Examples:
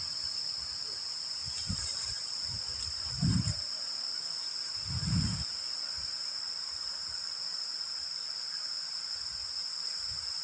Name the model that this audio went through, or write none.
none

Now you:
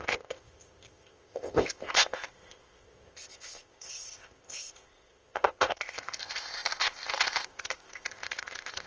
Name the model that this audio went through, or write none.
codec, ZipCodec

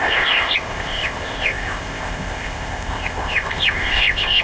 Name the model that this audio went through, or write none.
codec, ZipCodec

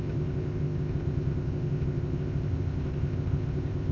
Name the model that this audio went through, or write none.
codec, ZipCodec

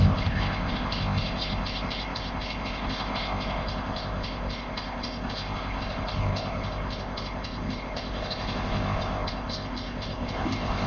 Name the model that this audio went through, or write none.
codec, ZipCodec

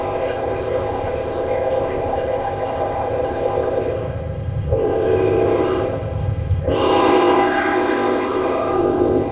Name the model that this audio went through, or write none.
codec, ZipCodec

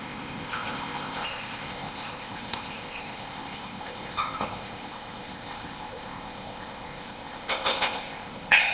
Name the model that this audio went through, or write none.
codec, ZipCodec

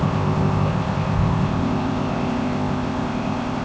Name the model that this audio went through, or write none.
codec, ZipCodec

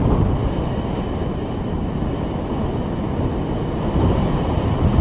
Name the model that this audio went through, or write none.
none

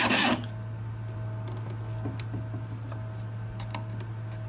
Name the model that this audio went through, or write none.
none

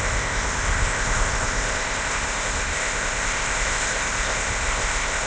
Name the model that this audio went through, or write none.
codec, ZipCodec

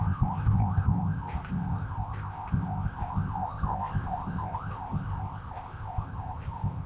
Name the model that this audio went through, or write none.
codec, ZipCodec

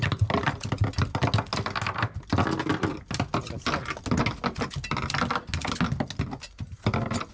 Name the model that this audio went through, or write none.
none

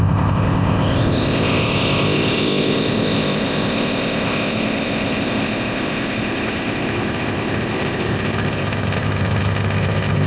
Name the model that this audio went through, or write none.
codec, ZipCodec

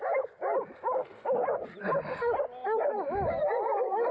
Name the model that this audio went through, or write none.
none